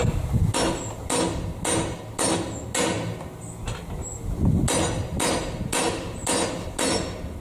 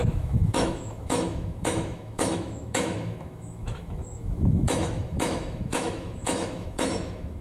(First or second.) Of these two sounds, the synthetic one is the second